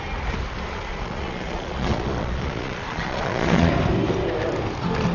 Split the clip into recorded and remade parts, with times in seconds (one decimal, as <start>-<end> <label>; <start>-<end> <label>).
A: 0.0-0.9 recorded; 0.9-3.7 remade; 3.7-5.1 recorded